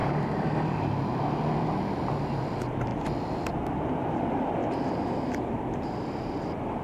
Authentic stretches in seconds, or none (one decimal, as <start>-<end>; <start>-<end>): 2.9-4.0; 4.6-5.7